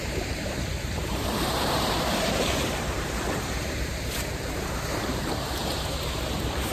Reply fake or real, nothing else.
fake